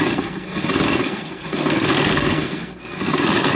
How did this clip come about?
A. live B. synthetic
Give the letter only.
B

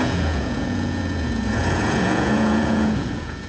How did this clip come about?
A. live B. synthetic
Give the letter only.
B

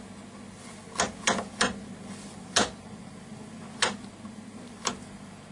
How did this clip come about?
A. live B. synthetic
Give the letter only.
A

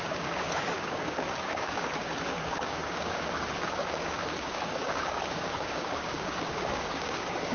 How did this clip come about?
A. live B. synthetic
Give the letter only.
B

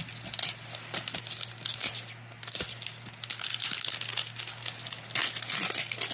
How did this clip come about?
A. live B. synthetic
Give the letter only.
A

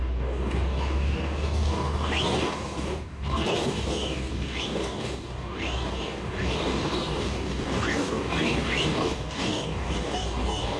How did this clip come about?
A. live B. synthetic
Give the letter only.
B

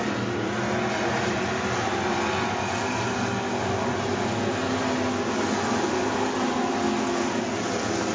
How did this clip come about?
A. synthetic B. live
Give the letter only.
B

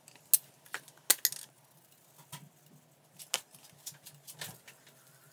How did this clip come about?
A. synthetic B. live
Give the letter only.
B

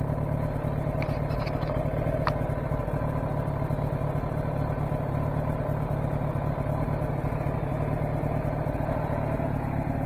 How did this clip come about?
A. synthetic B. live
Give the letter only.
B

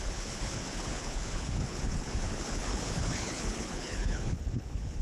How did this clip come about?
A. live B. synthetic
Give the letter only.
B